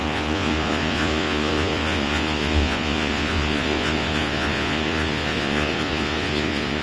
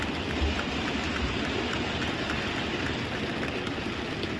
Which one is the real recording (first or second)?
second